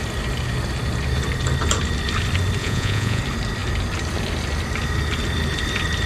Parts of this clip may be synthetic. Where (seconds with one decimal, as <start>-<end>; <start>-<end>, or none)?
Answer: 2.6-3.2